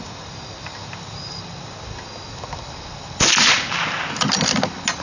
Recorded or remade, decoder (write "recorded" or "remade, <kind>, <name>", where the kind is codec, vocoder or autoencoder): recorded